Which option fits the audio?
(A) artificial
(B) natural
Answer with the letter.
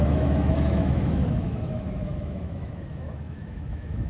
A